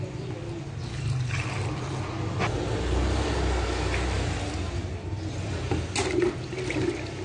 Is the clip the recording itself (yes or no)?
yes